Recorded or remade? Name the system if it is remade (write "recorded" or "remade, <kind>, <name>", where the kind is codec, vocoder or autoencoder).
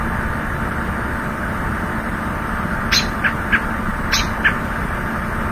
recorded